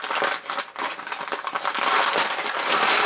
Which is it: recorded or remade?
recorded